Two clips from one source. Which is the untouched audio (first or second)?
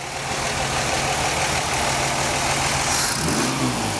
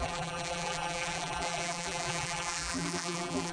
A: first